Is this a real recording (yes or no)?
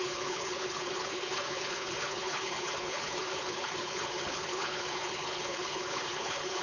no